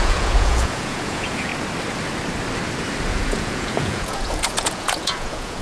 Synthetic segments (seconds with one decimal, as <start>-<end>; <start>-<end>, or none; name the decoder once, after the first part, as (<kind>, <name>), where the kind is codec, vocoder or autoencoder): 0.0-1.5 (vocoder, Vocos); 3.1-5.6